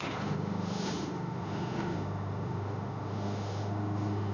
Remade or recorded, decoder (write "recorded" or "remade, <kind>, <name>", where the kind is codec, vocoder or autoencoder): remade, autoencoder, DAC-VAE